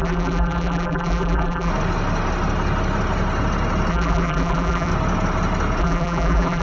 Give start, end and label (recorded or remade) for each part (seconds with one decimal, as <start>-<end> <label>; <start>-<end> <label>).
0.0-1.7 remade; 1.7-3.9 recorded; 3.9-4.9 remade; 4.9-5.8 recorded; 5.8-6.6 remade